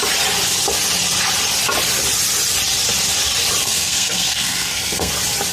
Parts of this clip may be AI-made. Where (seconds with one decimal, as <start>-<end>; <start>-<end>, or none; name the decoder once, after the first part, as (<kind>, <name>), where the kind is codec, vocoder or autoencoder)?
3.6-5.1 (codec, SNAC)